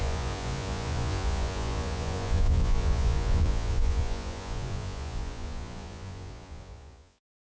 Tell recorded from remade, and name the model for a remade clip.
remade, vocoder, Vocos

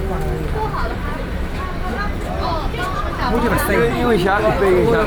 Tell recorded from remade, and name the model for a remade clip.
recorded